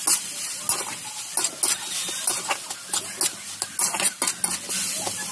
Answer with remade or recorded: recorded